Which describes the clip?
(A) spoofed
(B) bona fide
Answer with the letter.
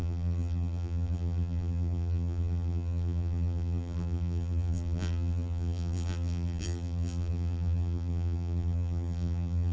A